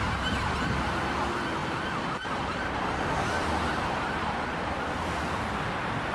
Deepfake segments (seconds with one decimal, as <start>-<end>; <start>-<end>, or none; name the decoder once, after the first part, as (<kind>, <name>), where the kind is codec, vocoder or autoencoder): none